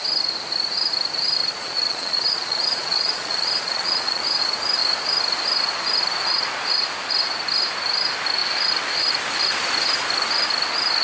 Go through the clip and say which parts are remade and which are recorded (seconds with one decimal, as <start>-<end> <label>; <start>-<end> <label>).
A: 0.0-1.4 recorded; 1.4-4.2 remade; 4.2-11.0 recorded